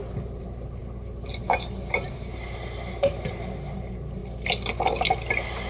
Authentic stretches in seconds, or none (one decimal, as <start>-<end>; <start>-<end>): 4.2-5.7